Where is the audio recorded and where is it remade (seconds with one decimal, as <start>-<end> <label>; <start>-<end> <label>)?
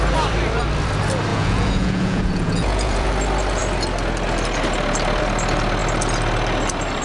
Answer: 0.0-1.3 recorded; 1.3-3.1 remade; 3.1-7.0 recorded